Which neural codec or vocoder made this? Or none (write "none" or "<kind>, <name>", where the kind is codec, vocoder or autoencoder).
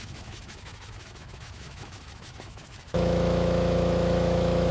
autoencoder, DAC-VAE